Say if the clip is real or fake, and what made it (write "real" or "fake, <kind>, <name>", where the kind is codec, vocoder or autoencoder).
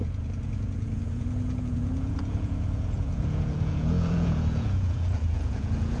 fake, vocoder, Vocos